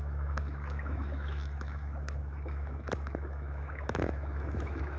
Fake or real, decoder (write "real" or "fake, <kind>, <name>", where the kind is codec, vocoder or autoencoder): fake, autoencoder, DAC-VAE